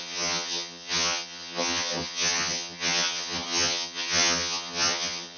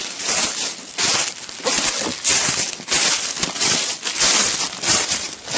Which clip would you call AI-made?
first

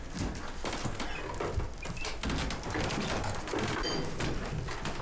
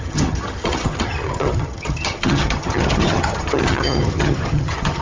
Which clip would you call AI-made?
second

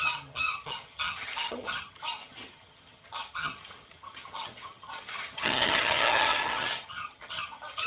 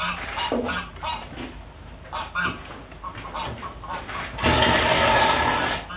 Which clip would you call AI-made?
first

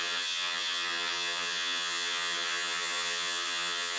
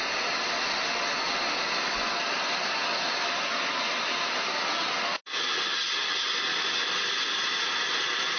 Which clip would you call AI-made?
first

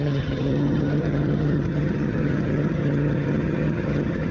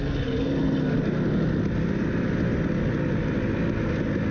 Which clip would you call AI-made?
first